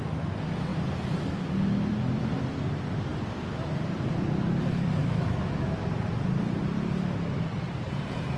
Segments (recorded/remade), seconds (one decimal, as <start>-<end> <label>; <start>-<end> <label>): 0.0-5.0 recorded; 5.0-6.0 remade; 6.0-8.4 recorded